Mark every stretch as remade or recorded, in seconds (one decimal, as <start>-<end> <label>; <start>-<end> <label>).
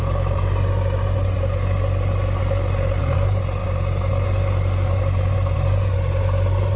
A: 0.0-6.8 recorded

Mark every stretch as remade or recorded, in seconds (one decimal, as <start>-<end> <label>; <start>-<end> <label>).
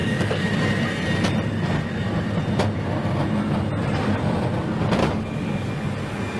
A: 0.0-0.5 remade; 0.5-5.0 recorded; 5.0-5.7 remade; 5.7-6.4 recorded